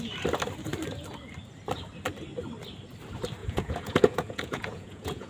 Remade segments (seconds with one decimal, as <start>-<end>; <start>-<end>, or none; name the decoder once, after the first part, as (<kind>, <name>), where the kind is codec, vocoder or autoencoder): 3.4-5.3 (vocoder, Vocos)